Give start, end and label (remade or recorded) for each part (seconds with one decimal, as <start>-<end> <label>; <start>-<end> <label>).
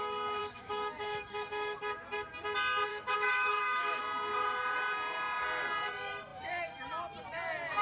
0.0-0.4 recorded; 0.4-1.8 remade; 1.8-2.9 recorded; 2.9-4.0 remade; 4.0-7.8 recorded